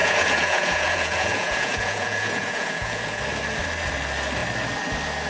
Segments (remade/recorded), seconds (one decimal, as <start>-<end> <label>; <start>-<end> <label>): 0.0-3.2 remade; 3.2-5.3 recorded

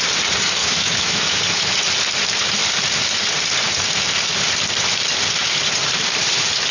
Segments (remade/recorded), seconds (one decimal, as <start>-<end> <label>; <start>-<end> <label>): 0.0-0.6 recorded; 0.6-1.4 remade; 1.4-6.7 recorded

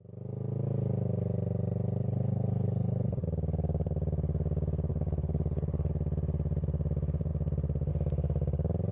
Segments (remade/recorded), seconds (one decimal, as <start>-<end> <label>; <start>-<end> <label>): 0.0-2.0 recorded; 2.0-3.2 remade; 3.2-4.9 recorded; 4.9-5.9 remade; 5.9-8.9 recorded

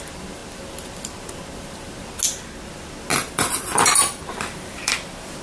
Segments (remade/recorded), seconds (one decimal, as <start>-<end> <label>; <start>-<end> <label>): 0.0-3.1 recorded; 3.1-4.9 remade; 4.9-5.4 recorded